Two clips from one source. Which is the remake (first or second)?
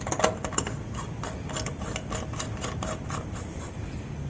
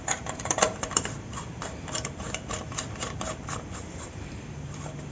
second